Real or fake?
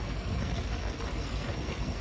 fake